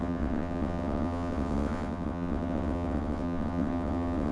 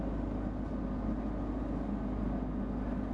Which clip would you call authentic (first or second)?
second